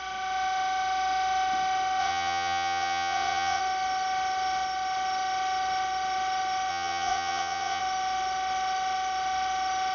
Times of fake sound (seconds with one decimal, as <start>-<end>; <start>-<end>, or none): 2.0-3.6; 6.7-7.8